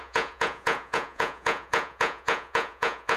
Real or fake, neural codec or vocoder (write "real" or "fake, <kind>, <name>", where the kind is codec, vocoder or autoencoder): fake, vocoder, Vocos